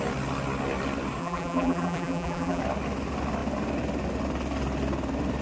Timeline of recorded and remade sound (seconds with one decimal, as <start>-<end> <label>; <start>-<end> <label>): 0.0-1.2 recorded; 1.2-2.6 remade; 2.6-5.4 recorded